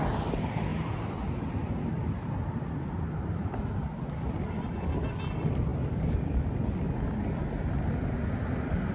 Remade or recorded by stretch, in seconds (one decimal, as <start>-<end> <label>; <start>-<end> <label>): 0.0-8.9 recorded

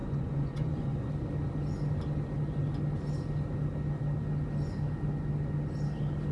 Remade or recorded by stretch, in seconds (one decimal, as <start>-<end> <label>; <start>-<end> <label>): 0.0-1.1 remade; 1.1-6.3 recorded

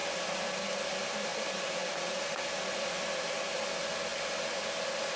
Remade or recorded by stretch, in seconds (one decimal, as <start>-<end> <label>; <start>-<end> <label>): 0.0-0.6 remade; 0.6-1.3 recorded; 1.3-2.2 remade; 2.2-5.2 recorded

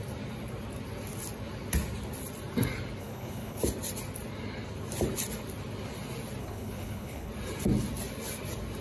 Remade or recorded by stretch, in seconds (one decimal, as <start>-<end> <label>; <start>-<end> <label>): 0.0-3.0 recorded; 3.0-3.6 remade; 3.6-6.4 recorded; 6.4-7.3 remade; 7.3-8.8 recorded

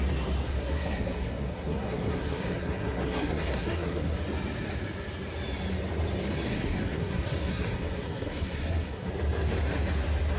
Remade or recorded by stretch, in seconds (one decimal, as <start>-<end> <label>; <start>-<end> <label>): 0.0-0.5 recorded; 0.5-4.2 remade; 4.2-6.5 recorded; 6.5-9.1 remade; 9.1-10.4 recorded

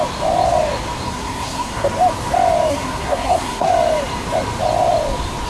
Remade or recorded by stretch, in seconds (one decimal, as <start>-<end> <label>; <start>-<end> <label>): 0.0-1.1 recorded; 1.1-1.9 remade; 1.9-2.7 recorded; 2.7-3.7 remade; 3.7-5.5 recorded

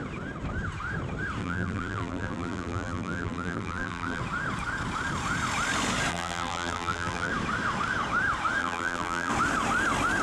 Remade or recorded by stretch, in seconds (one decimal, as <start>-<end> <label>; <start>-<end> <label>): 0.0-1.4 recorded; 1.4-4.2 remade; 4.2-6.1 recorded; 6.1-7.3 remade; 7.3-8.6 recorded; 8.6-9.3 remade; 9.3-10.2 recorded

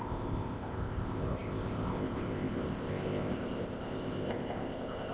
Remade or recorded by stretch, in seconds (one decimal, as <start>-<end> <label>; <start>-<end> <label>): 0.0-5.1 remade